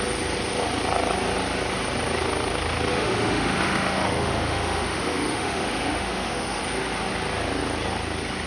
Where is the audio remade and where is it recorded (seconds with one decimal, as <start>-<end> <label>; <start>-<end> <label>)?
0.0-2.9 recorded; 2.9-6.6 remade; 6.6-8.5 recorded